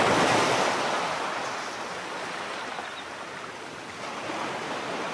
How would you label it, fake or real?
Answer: real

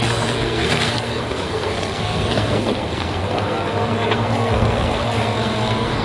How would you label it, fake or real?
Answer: fake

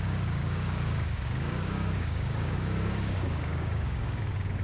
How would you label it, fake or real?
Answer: fake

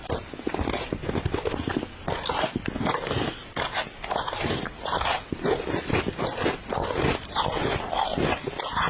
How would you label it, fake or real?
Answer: real